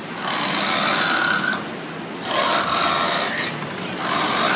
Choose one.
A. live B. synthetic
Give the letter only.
A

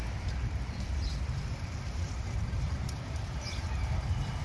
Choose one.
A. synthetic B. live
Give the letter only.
A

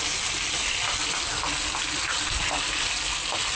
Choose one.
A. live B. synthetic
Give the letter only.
A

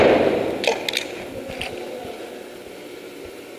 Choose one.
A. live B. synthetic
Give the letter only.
A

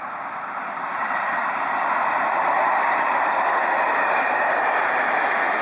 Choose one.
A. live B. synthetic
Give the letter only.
B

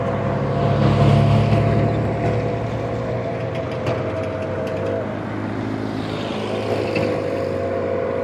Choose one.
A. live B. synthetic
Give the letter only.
A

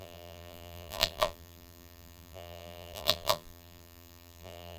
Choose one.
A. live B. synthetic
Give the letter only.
B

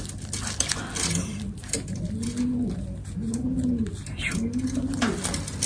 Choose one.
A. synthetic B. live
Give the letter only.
B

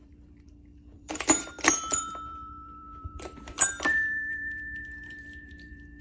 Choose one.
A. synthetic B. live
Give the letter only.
A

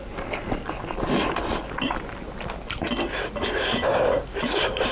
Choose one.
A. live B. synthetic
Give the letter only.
A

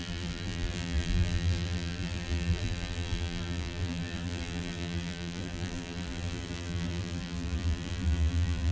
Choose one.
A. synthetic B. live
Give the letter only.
A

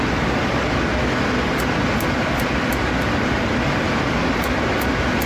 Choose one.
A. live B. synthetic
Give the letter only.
A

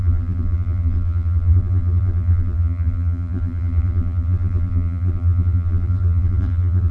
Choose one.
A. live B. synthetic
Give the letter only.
B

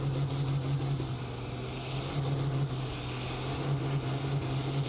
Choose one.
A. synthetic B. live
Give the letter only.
B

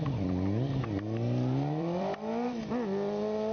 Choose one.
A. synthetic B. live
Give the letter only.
A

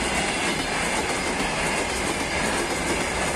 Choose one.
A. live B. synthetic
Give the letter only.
A